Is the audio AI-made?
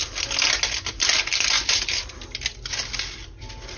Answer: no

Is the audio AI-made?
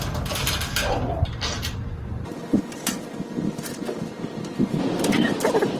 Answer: no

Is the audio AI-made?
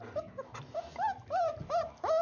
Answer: no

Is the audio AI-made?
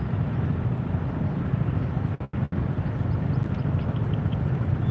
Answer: no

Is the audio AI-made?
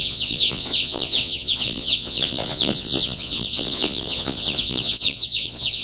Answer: yes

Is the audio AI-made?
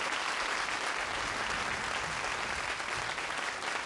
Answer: no